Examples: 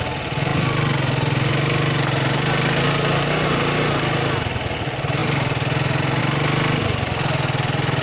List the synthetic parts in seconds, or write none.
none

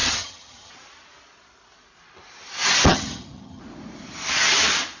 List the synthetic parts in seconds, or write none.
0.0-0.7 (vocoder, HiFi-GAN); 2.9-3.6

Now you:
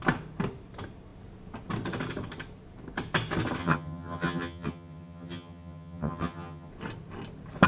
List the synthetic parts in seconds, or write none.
3.6-6.7 (vocoder, HiFi-GAN)

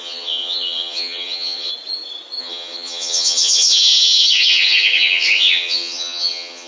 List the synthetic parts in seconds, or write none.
0.0-1.7 (vocoder, HiFi-GAN); 2.4-6.7

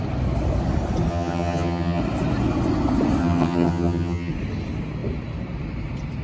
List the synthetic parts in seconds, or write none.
1.1-2.0 (vocoder, HiFi-GAN); 3.2-4.3